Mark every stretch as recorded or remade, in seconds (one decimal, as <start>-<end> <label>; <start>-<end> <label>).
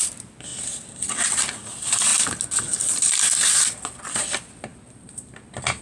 0.0-5.8 recorded